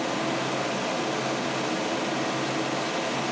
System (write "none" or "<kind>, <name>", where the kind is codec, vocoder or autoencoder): none